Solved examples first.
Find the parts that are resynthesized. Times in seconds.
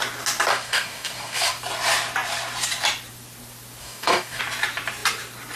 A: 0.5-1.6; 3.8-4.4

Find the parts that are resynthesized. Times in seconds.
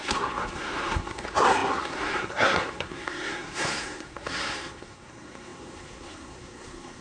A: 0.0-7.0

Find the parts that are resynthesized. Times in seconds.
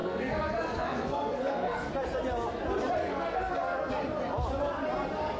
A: 0.0-1.9; 3.0-3.9